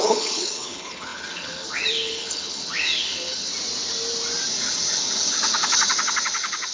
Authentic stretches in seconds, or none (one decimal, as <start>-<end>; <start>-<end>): 3.5-4.5